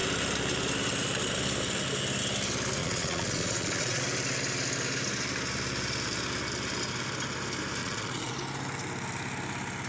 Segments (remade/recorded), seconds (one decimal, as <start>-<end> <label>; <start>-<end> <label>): 0.0-2.8 recorded; 2.8-4.0 remade; 4.0-7.8 recorded; 7.8-8.3 remade; 8.3-9.9 recorded